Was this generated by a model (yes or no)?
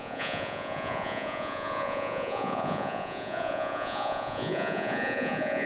yes